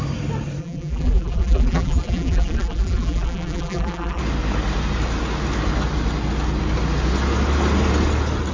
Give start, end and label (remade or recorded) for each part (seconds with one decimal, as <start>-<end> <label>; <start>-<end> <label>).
0.0-0.6 recorded; 0.6-4.2 remade; 4.2-8.5 recorded